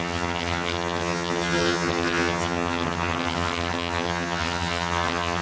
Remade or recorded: remade